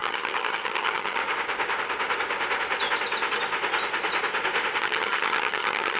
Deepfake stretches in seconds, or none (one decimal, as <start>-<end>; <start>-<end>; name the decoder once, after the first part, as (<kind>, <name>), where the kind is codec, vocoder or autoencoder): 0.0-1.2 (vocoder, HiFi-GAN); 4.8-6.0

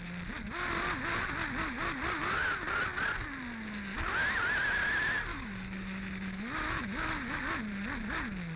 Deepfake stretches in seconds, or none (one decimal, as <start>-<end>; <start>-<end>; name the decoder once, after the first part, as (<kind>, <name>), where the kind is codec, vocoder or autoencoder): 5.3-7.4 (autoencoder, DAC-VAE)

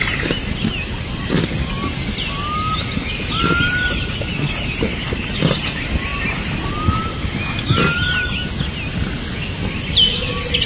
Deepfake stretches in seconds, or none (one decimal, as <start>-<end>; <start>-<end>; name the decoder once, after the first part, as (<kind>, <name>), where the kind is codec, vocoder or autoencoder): none